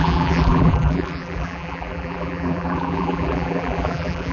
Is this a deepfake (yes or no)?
yes